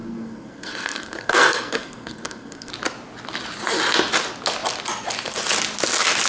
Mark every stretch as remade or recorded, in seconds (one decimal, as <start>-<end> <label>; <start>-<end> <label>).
0.0-2.7 remade; 2.7-6.3 recorded

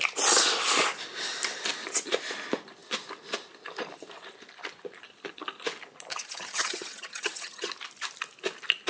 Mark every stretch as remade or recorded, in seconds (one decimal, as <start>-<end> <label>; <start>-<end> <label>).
0.0-6.1 recorded; 6.1-7.7 remade; 7.7-8.9 recorded

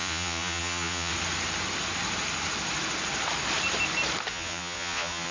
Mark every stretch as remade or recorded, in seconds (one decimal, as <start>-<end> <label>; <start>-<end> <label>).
0.0-1.1 remade; 1.1-4.3 recorded; 4.3-5.3 remade

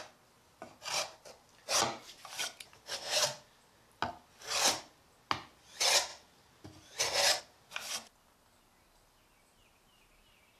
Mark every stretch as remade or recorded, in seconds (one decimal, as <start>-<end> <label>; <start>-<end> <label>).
0.0-10.6 recorded